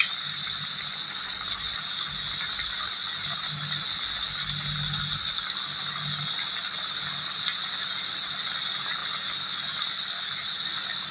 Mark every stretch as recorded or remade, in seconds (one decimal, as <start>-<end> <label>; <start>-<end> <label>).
0.0-11.1 recorded